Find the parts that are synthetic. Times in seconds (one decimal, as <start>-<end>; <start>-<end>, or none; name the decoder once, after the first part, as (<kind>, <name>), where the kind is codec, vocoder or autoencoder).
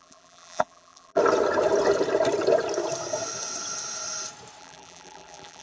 0.0-1.2 (vocoder, BigVGAN v2); 4.6-5.6